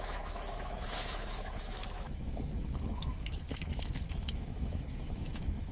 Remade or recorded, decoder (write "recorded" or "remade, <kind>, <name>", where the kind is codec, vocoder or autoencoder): remade, autoencoder, DAC-VAE